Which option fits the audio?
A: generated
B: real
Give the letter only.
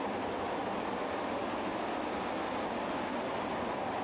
B